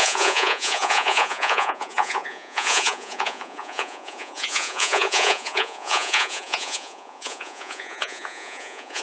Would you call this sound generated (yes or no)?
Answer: yes